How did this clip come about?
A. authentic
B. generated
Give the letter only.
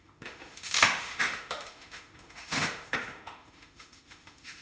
B